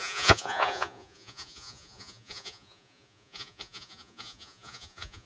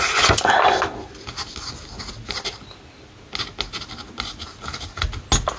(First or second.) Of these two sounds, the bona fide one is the second